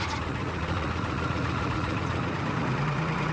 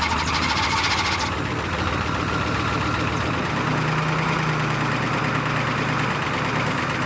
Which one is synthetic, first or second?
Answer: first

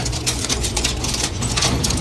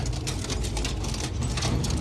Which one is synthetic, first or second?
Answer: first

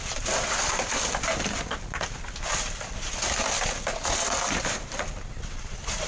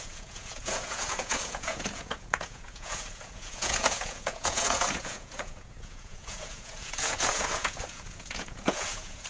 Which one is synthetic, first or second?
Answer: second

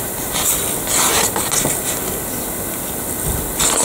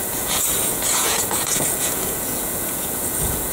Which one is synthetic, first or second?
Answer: second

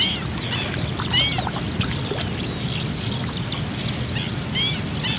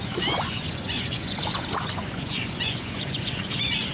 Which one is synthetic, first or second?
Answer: second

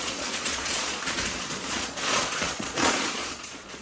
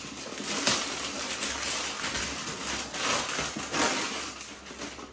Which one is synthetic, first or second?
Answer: first